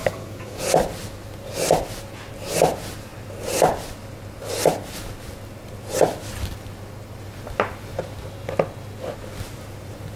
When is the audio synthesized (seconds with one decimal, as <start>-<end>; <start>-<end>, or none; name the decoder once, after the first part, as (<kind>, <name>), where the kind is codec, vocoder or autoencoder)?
0.0-0.6 (codec, DAC)